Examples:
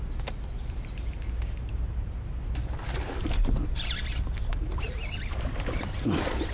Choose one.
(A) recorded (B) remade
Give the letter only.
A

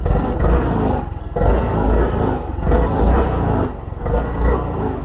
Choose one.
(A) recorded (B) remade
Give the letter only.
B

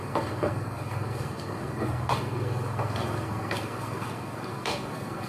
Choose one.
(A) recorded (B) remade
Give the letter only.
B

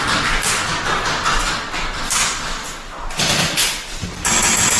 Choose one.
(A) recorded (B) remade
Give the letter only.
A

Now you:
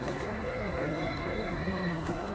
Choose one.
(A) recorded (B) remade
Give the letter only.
B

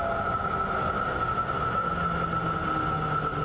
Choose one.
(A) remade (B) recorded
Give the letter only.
B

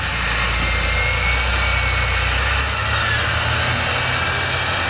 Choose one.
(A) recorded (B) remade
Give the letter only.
A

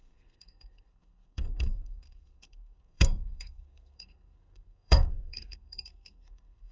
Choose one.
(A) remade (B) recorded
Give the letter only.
A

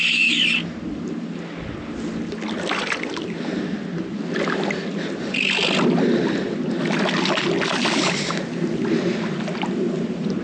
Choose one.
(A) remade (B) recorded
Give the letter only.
B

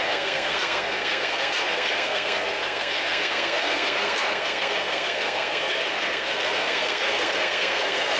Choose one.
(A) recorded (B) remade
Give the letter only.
B